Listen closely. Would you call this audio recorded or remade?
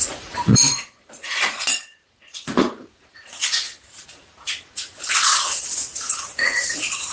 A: remade